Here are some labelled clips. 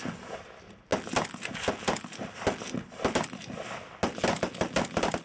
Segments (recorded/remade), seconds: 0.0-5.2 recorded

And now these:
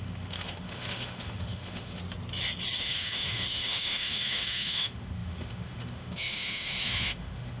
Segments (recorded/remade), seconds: 0.0-2.0 remade; 2.0-2.8 recorded; 2.8-7.6 remade

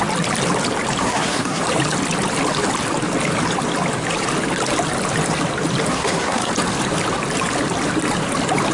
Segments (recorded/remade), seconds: 0.0-1.0 recorded; 1.0-1.6 remade; 1.6-5.9 recorded; 5.9-6.5 remade; 6.5-8.7 recorded

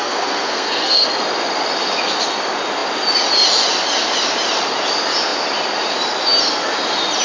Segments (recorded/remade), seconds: 0.0-1.1 remade; 1.1-7.2 recorded

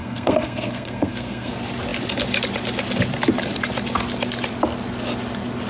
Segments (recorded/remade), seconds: 0.0-1.5 remade; 1.5-5.7 recorded

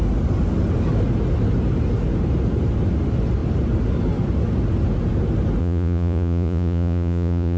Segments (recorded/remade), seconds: 0.0-5.6 recorded; 5.6-7.6 remade

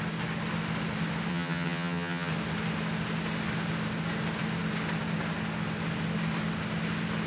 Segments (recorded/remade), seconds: 0.0-1.3 recorded; 1.3-2.3 remade; 2.3-7.3 recorded

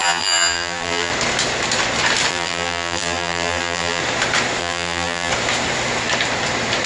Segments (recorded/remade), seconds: 0.0-1.1 remade; 1.1-2.3 recorded; 2.3-4.0 remade; 4.0-4.6 recorded; 4.6-5.3 remade; 5.3-6.9 recorded